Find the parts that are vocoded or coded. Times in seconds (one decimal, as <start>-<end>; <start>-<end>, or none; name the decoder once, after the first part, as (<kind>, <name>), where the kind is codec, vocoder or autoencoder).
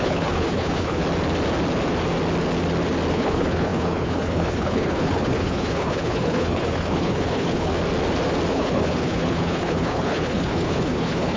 0.0-1.0 (codec, HILCodec); 3.1-7.7; 8.5-11.4